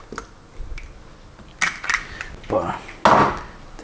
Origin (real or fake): real